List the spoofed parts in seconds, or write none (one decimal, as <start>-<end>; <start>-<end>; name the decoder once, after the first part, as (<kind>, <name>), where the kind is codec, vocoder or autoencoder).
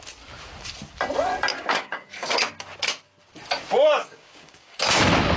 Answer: 1.5-2.3 (codec, DAC); 4.0-5.0